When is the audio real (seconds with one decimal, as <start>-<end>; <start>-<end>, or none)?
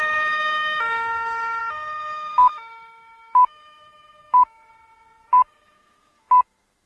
4.7-5.4